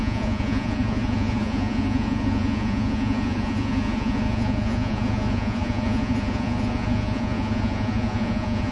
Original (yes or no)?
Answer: no